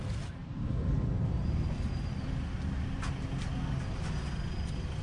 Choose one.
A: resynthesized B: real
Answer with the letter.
B